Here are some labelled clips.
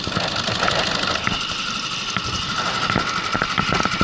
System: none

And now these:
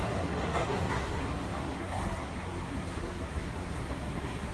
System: codec, SNAC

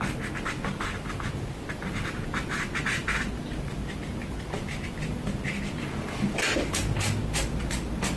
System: none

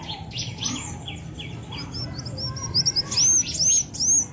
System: none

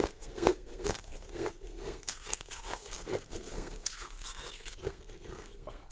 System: codec, SNAC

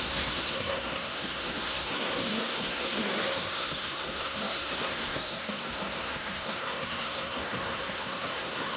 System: codec, SNAC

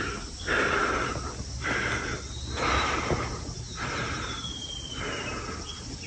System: none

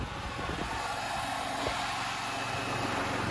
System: none